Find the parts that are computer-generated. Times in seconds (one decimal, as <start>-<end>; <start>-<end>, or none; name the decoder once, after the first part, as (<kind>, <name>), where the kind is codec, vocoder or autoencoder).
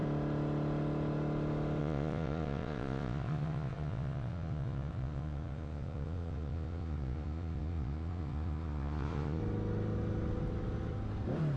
1.8-9.4 (vocoder, Vocos)